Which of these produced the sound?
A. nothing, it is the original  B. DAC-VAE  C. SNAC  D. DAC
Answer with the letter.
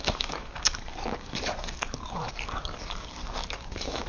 D